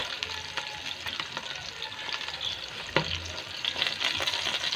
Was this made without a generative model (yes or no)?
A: yes